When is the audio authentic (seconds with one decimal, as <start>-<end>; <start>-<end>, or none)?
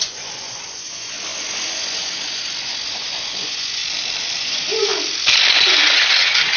3.8-4.4; 4.9-5.6